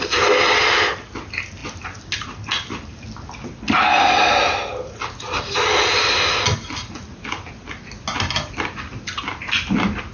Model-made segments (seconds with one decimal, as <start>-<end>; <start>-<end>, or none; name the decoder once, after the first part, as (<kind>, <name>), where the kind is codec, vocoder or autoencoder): none